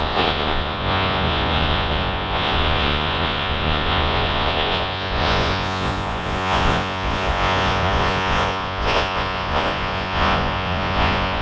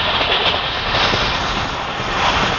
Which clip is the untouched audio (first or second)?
second